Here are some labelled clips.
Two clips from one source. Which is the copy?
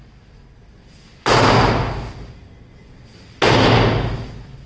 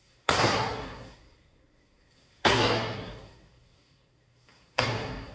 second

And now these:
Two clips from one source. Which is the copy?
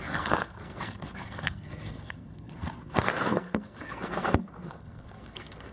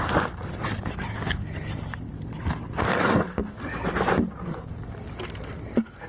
first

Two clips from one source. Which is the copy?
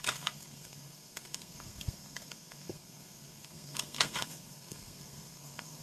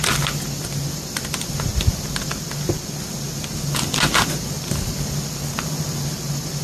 first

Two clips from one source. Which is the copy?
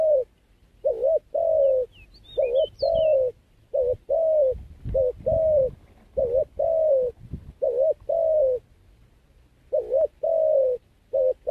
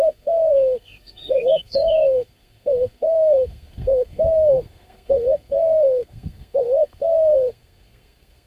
second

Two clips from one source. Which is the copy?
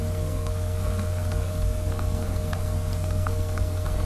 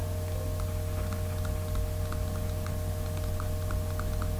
first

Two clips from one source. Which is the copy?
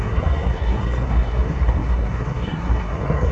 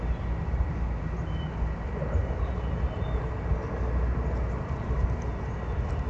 first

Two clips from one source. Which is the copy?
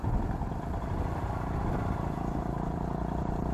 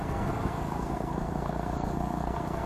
second